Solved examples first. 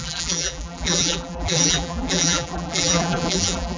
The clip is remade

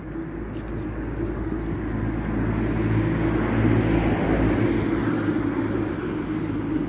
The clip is recorded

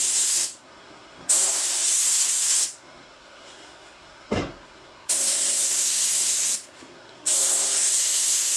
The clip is remade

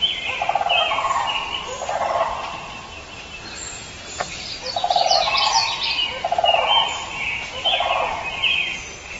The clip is recorded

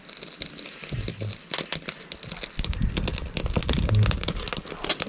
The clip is recorded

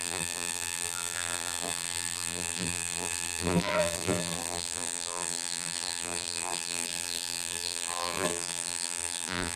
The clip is remade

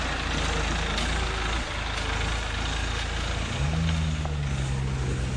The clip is recorded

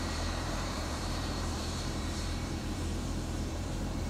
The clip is remade